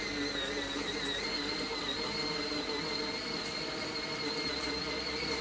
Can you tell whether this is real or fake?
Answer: real